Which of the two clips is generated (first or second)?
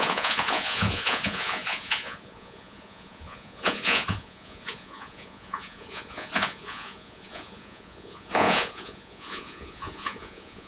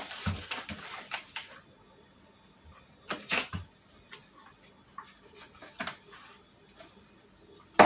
first